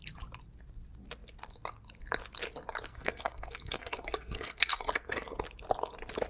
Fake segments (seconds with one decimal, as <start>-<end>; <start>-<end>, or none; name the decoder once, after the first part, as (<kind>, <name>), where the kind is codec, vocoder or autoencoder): 2.9-5.2 (codec, SNAC)